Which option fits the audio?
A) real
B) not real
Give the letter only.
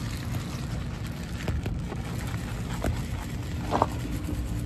A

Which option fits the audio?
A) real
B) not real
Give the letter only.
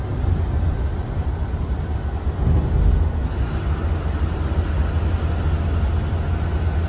A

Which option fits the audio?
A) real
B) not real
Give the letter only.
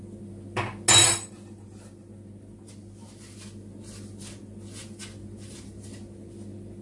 A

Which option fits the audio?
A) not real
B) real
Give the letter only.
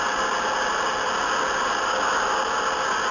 B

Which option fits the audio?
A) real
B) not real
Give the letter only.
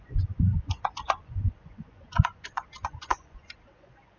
B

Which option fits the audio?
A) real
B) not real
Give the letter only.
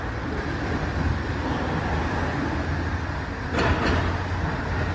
A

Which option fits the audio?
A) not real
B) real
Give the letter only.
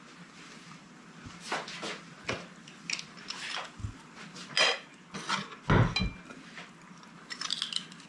B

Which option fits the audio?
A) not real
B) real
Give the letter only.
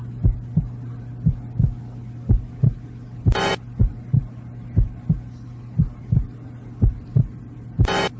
B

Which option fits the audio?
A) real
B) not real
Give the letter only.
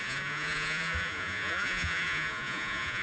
B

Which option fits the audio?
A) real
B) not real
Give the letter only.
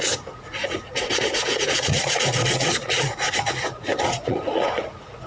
B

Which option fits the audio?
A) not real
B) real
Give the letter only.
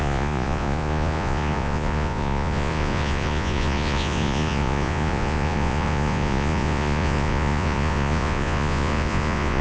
A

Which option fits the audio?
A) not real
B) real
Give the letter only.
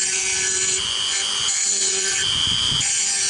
A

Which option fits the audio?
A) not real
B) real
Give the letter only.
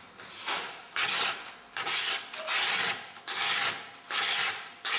B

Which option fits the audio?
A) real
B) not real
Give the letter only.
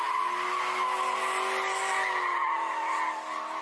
A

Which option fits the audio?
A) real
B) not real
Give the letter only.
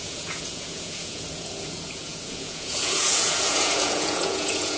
B